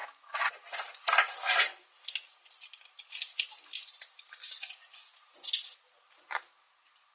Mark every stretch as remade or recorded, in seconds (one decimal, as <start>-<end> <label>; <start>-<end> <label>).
0.0-0.8 remade; 0.8-4.4 recorded; 4.4-5.8 remade; 5.8-7.1 recorded